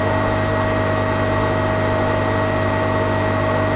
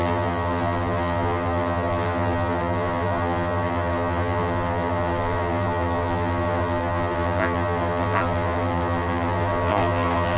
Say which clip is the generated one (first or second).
second